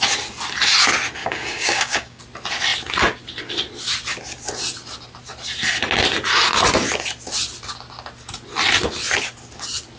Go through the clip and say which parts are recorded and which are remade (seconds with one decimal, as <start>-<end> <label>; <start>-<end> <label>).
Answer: 0.0-1.2 recorded; 1.2-2.2 remade; 2.2-10.0 recorded